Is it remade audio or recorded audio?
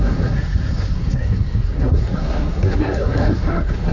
remade